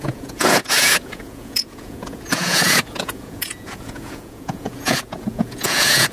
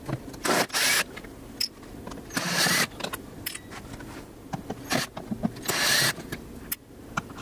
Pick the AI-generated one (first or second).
first